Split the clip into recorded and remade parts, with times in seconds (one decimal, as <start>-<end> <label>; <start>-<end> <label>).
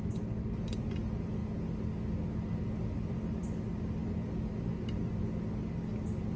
0.0-6.4 recorded